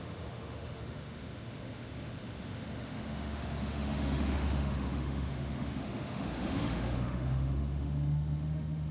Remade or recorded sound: remade